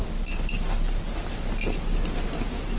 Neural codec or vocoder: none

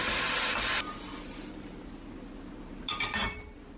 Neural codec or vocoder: none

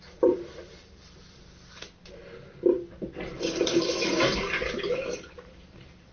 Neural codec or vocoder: none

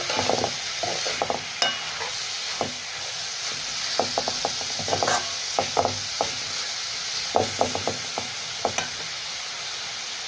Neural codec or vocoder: none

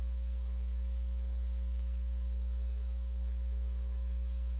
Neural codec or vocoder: codec, SNAC